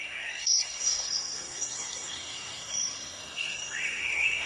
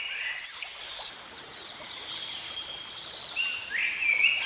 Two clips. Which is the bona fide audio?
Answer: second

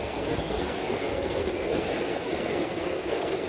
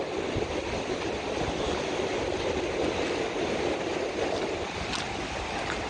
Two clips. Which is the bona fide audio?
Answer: second